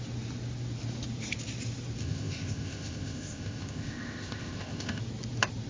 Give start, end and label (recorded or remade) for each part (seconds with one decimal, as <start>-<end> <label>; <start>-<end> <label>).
0.0-2.0 recorded; 2.0-5.0 remade; 5.0-5.7 recorded